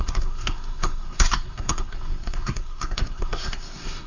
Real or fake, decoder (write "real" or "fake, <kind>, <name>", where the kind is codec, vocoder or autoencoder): fake, codec, SNAC